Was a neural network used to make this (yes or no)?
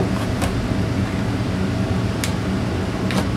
no